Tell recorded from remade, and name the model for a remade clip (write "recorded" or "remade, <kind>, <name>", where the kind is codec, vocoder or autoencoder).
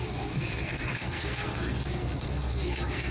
remade, codec, SNAC